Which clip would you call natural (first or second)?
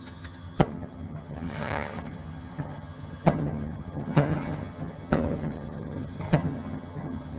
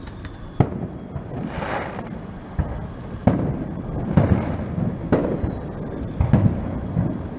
second